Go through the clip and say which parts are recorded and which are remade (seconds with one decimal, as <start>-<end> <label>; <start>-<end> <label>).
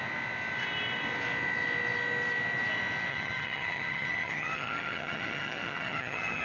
0.0-3.1 recorded; 3.1-6.4 remade